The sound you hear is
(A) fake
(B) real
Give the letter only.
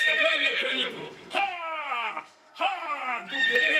A